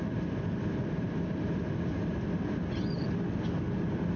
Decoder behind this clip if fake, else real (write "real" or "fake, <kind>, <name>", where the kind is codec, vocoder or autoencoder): real